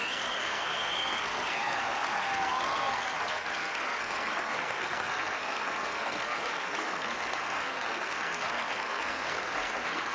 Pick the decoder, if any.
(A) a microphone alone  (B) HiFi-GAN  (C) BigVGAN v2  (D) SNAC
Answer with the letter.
D